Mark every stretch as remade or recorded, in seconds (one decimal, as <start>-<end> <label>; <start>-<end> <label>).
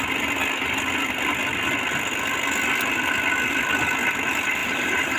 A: 0.0-4.6 recorded; 4.6-5.2 remade